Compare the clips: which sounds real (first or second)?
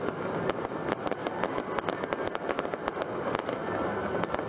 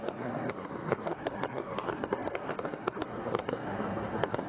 first